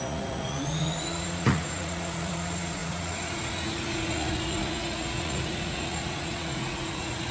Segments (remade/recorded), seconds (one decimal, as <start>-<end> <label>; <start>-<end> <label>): 0.0-7.3 remade